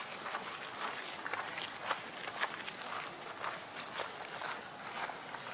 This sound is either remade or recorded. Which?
recorded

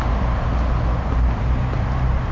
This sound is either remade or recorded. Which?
recorded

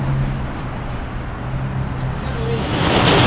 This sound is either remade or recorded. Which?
recorded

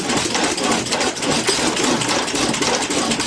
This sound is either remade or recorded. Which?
recorded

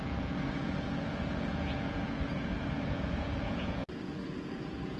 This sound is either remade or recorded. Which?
remade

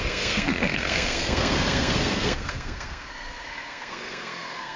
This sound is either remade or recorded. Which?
remade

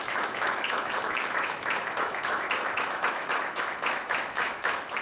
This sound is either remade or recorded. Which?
remade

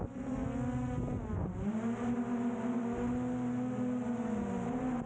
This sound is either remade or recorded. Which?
recorded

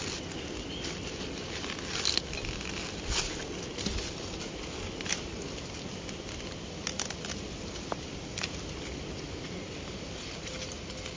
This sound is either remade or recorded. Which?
recorded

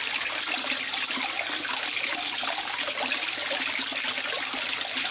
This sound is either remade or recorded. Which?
recorded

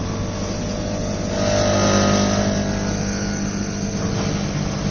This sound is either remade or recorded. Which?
recorded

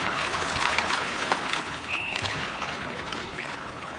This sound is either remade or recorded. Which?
remade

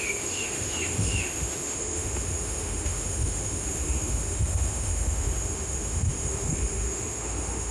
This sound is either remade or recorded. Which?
remade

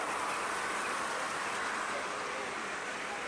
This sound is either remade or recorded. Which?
remade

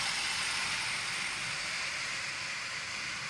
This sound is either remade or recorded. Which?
recorded